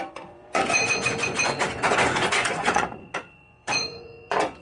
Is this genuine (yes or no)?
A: no